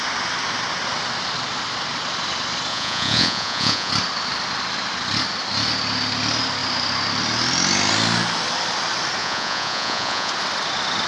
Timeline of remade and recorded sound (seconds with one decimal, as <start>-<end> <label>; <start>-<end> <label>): 0.0-2.7 recorded; 2.7-3.9 remade; 3.9-9.2 recorded; 9.2-10.3 remade; 10.3-11.1 recorded